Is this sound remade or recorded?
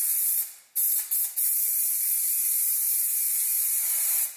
recorded